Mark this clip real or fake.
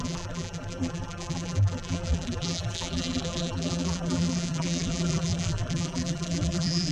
fake